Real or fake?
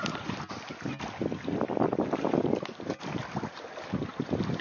real